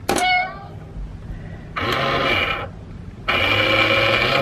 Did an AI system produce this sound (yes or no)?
no